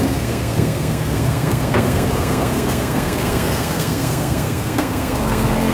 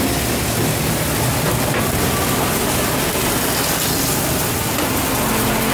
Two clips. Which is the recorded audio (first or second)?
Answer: second